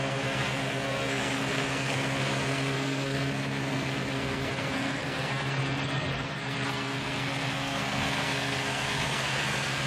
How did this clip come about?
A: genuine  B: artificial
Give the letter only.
B